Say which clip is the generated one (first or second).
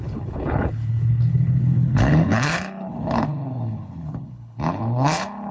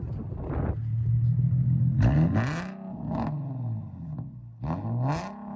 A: first